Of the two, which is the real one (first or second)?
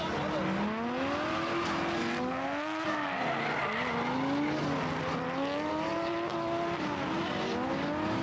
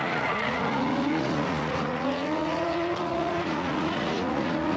first